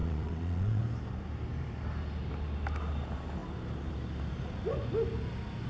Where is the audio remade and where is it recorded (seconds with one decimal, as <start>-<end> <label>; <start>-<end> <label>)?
0.0-0.8 remade; 0.8-5.7 recorded